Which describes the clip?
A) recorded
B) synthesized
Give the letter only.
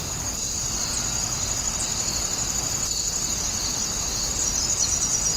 A